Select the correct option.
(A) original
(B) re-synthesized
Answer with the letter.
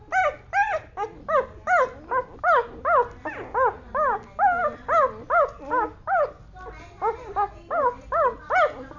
A